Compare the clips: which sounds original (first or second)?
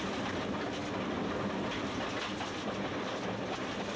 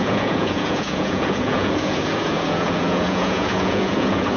first